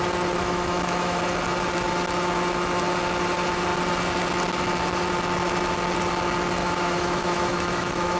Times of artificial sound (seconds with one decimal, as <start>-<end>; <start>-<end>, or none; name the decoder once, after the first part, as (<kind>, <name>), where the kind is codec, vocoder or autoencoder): 0.4-1.2 (autoencoder, DAC-VAE); 6.6-8.2